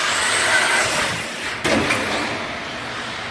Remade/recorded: recorded